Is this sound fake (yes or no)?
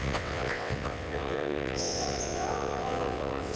yes